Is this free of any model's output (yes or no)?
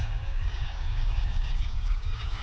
no